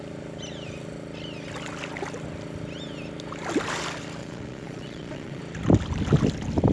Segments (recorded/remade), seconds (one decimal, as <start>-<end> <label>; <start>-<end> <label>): 0.0-4.2 recorded; 4.2-5.4 remade; 5.4-6.7 recorded